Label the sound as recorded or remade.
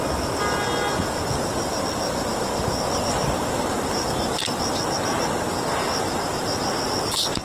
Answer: recorded